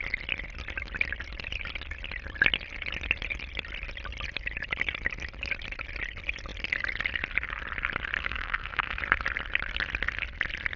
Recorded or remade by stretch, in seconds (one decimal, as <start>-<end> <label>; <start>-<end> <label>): 0.0-8.2 recorded; 8.2-9.0 remade; 9.0-10.8 recorded